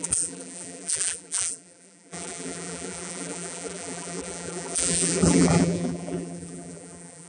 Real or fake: fake